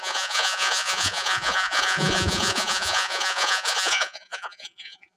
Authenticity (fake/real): fake